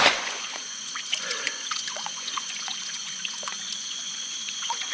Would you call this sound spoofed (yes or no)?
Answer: yes